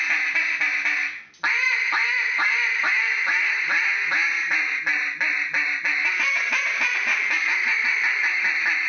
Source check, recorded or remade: recorded